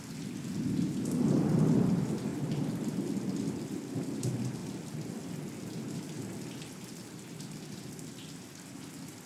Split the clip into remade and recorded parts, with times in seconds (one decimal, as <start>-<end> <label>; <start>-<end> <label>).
0.0-9.3 recorded